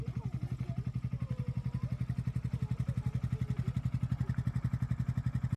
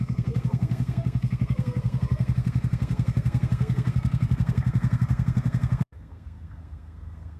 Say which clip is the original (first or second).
first